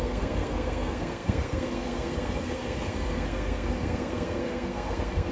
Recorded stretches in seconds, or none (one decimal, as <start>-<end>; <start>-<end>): none